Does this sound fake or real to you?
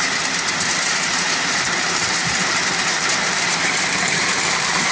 fake